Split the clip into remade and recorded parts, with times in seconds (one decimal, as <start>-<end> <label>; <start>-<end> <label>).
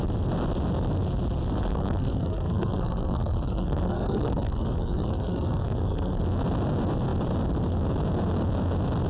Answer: 0.0-1.7 recorded; 1.7-6.2 remade; 6.2-9.1 recorded